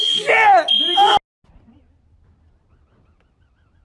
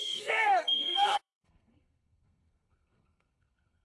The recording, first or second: first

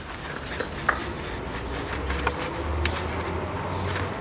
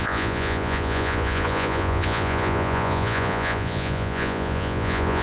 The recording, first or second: first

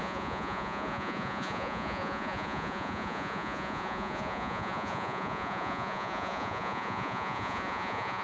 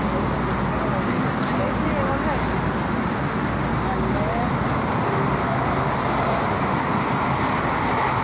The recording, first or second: second